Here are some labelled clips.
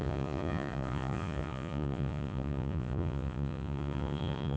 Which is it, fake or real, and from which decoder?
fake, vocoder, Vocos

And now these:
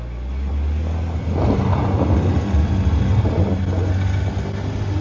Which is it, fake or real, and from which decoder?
real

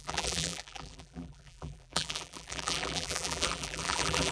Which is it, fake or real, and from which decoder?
fake, vocoder, BigVGAN v2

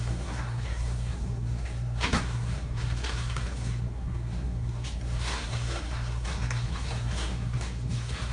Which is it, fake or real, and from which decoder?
fake, codec, SNAC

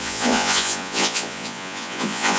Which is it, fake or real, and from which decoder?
fake, vocoder, Vocos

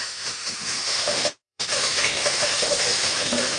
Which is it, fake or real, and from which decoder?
fake, autoencoder, DAC-VAE